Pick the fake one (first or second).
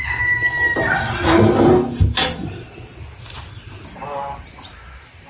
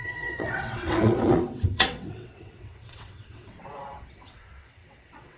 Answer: second